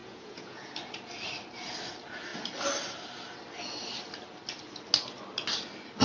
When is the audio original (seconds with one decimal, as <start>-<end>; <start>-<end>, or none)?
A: 0.7-6.0